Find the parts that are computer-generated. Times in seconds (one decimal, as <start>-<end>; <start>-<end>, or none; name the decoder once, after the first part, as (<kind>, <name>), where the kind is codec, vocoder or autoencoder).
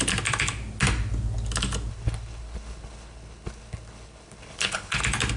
1.9-5.0 (codec, HILCodec)